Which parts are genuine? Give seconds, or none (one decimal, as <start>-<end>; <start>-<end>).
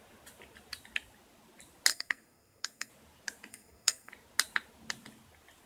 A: 0.0-1.9; 2.9-3.5; 4.1-5.7